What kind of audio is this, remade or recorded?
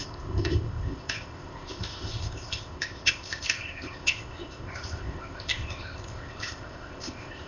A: remade